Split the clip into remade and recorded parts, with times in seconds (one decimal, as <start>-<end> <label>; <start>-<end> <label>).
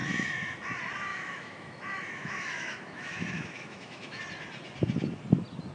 0.0-0.6 remade; 0.6-1.1 recorded; 1.1-4.2 remade; 4.2-5.7 recorded